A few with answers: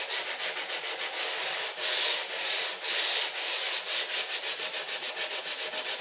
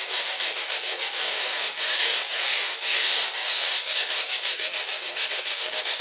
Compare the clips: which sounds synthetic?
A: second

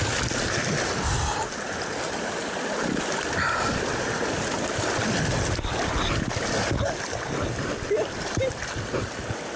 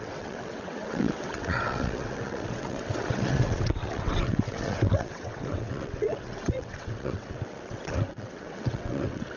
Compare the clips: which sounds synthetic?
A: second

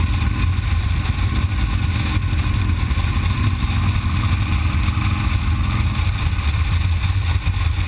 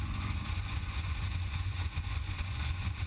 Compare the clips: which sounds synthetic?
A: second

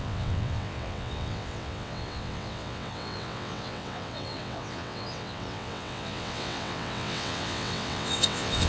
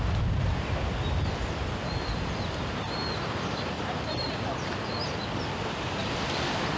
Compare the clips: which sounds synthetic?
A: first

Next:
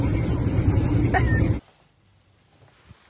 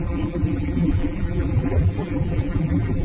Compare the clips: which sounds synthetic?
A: second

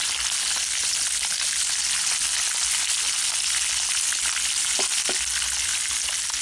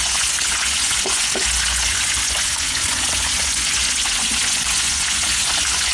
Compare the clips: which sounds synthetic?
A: second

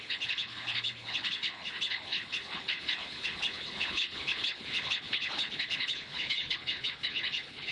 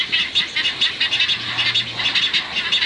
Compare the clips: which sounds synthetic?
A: first